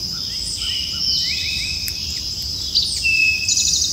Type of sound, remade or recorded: remade